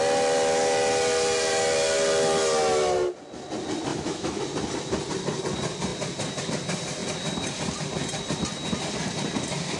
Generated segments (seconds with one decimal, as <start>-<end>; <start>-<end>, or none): 3.9-4.4